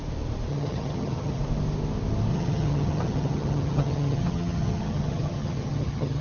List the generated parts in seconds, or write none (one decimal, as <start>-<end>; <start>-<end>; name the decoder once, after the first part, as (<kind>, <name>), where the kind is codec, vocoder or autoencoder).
0.5-1.4 (vocoder, HiFi-GAN); 2.3-6.2